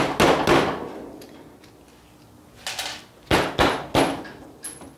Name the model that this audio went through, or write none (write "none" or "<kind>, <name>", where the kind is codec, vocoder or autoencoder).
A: none